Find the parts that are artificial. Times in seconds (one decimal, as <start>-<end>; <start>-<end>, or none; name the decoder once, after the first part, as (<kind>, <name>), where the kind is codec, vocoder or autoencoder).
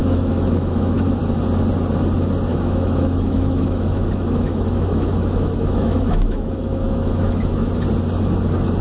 0.0-1.2 (autoencoder, DAC-VAE); 2.5-7.7